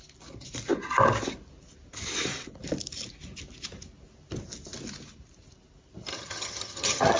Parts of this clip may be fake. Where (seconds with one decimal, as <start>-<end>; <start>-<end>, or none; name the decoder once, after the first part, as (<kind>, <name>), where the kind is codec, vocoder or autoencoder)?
6.1-7.2 (vocoder, HiFi-GAN)

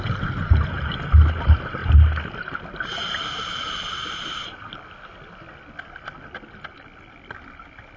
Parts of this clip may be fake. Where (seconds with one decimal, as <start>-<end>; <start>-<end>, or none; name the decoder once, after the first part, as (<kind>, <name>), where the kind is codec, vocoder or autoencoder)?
none

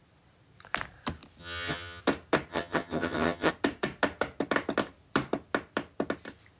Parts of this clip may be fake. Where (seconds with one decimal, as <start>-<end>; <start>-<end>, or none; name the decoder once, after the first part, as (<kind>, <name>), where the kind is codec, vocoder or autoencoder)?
1.4-2.0 (vocoder, HiFi-GAN); 2.5-3.5

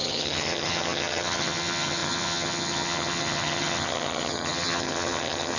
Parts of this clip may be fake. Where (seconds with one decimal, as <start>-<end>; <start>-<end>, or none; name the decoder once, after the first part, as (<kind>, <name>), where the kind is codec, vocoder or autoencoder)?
0.0-5.6 (vocoder, HiFi-GAN)